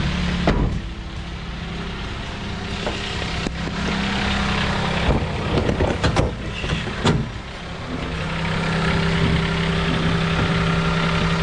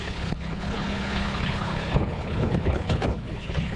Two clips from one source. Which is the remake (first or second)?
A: second